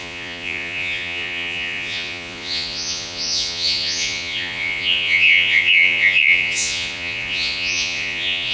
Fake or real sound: fake